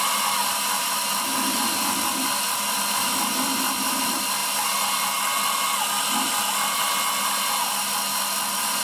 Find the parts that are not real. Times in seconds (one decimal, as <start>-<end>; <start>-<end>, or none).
none